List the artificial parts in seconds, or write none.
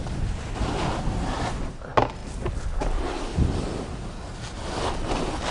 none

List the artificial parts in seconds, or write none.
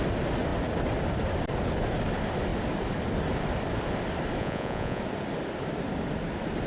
4.4-5.0 (vocoder, Vocos)